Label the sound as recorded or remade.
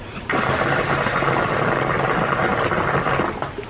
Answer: recorded